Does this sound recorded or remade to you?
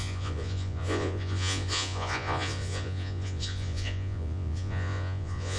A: remade